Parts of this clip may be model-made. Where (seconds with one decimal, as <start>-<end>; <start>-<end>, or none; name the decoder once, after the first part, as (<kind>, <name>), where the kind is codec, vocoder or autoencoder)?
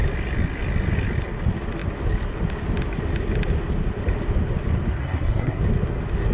5.0-5.6 (codec, SNAC)